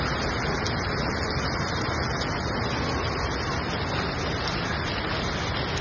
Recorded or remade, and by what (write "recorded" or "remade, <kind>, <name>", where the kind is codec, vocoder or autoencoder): recorded